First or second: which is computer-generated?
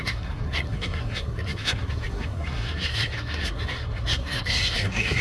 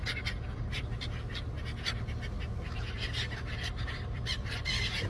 first